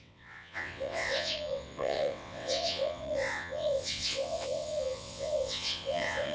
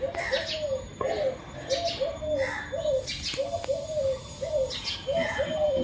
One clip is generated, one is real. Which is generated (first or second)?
first